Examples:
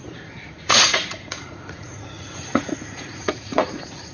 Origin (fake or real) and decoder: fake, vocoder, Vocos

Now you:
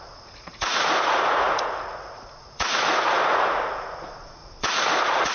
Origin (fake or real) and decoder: fake, vocoder, Vocos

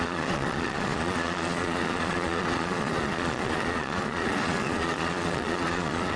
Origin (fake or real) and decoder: fake, vocoder, Vocos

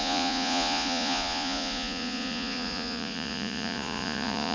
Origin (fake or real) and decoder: fake, vocoder, Vocos